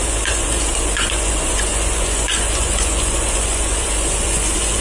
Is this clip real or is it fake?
fake